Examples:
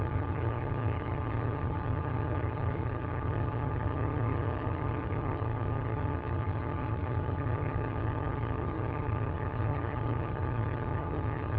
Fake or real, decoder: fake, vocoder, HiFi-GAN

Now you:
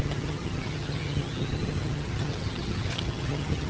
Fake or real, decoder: fake, vocoder, HiFi-GAN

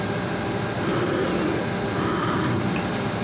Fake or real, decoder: real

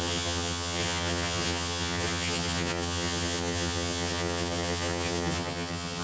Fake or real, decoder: fake, vocoder, HiFi-GAN